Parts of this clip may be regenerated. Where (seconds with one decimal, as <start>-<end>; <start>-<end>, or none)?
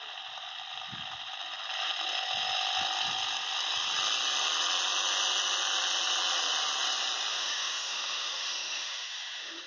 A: 7.3-9.7